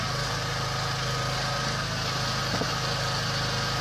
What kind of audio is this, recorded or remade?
recorded